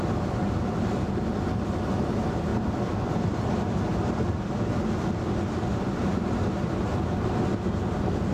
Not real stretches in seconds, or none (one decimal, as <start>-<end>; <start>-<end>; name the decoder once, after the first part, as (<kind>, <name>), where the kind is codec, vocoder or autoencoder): none